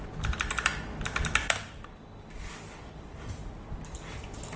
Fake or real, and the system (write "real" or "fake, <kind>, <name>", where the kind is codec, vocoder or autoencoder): real